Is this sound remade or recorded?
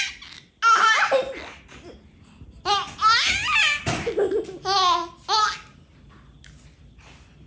recorded